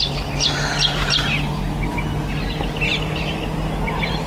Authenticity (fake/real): real